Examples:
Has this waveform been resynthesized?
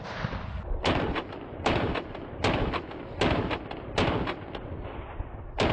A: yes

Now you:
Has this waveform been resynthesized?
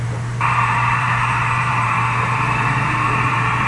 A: yes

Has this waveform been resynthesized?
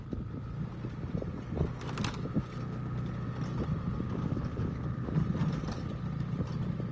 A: no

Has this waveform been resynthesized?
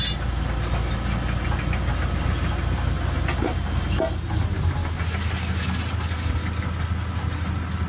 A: no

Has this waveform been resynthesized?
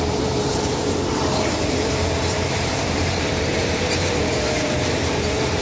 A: yes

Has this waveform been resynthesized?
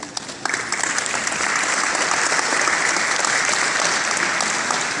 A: no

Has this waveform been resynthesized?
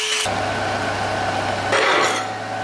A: no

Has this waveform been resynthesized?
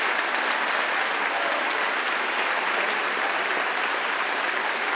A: no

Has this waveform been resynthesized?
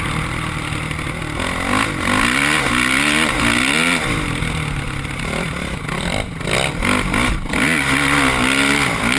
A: no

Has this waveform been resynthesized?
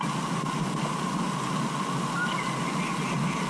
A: no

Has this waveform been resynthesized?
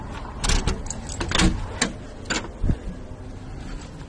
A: no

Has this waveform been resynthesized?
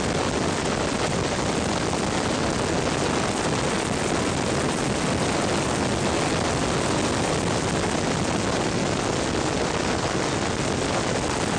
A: no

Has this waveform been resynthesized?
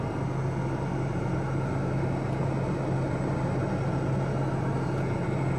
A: no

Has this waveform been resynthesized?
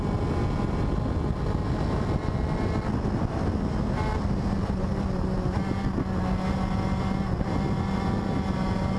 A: no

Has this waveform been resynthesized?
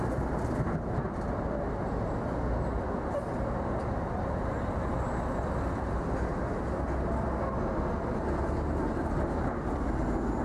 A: no